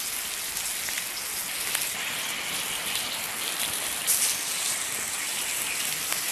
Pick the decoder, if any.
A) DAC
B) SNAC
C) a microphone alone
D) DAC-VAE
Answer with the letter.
C